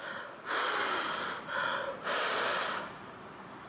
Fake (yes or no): no